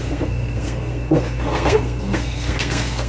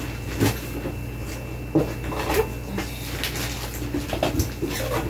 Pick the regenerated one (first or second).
first